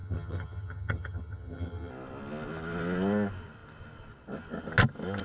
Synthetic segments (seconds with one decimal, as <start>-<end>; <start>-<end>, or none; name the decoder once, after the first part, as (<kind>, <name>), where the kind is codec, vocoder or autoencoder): 0.0-1.9 (vocoder, HiFi-GAN)